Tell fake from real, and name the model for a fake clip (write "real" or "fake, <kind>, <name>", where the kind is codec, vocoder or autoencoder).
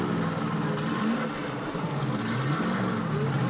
real